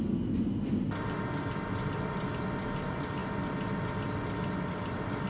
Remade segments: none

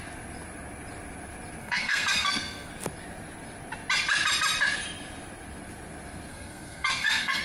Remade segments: 1.6-2.7 (codec, SNAC); 6.3-7.4

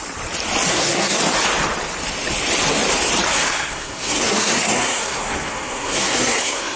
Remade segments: 0.7-1.2 (codec, SNAC); 3.3-6.8

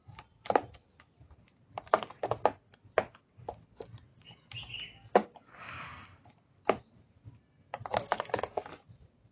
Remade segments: 5.5-6.2 (codec, SNAC)